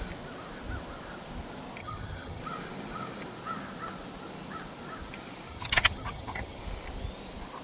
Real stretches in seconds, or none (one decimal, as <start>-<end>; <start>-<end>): 0.0-1.8; 2.4-5.5; 6.6-7.6